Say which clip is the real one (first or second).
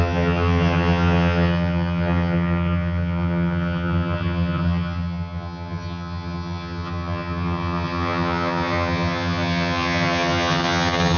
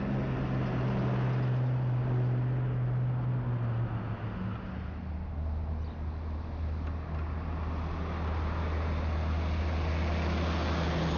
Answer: second